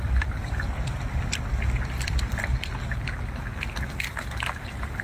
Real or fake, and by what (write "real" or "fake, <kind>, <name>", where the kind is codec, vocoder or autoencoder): fake, vocoder, BigVGAN v2